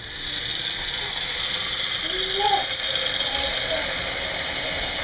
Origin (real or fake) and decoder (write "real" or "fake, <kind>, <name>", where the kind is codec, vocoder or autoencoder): real